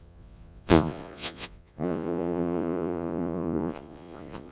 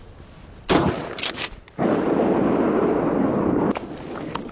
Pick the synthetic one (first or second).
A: first